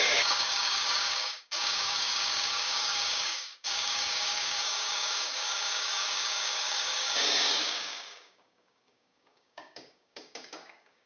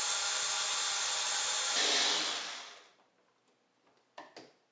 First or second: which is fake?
first